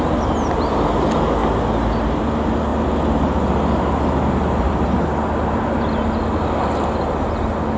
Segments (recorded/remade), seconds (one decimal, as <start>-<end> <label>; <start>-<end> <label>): 0.0-7.8 recorded

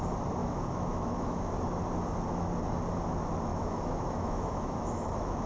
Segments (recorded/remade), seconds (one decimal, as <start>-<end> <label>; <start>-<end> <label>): 0.0-0.4 recorded; 0.4-1.5 remade; 1.5-3.5 recorded; 3.5-5.5 remade

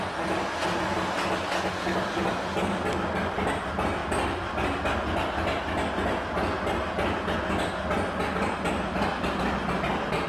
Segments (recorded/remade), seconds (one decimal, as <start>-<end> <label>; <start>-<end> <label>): 0.0-10.3 recorded

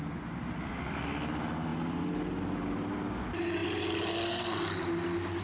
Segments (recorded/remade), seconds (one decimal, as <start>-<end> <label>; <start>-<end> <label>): 0.0-5.4 recorded

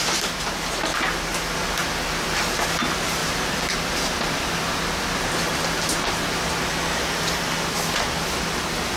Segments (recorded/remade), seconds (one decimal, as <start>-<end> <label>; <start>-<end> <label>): 0.0-3.2 recorded; 3.2-4.5 remade; 4.5-9.0 recorded

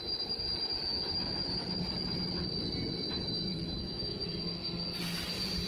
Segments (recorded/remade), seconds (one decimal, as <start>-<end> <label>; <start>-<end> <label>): 0.0-3.5 recorded; 3.5-4.2 remade; 4.2-5.7 recorded